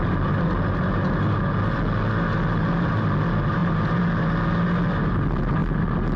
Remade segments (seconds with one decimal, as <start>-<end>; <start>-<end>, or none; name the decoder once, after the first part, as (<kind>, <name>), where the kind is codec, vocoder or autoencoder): none

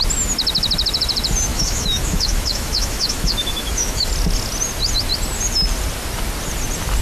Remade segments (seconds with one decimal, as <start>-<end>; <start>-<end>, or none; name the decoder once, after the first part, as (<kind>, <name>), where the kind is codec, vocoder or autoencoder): 1.5-4.1 (autoencoder, DAC-VAE)

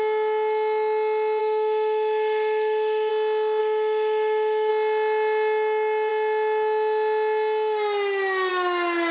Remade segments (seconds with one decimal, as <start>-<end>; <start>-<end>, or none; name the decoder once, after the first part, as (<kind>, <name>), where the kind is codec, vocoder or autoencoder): 1.4-3.1 (autoencoder, DAC-VAE); 3.6-4.7

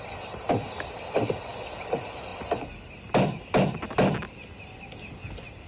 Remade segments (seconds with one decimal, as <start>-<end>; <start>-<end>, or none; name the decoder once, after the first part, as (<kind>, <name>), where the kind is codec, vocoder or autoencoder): none

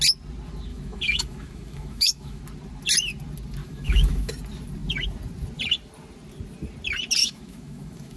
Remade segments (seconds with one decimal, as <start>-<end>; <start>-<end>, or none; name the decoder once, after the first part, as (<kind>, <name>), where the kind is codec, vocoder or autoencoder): 0.7-2.4 (autoencoder, DAC-VAE); 3.6-4.3; 7.2-8.2